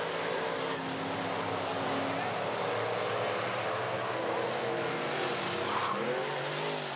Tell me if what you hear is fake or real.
real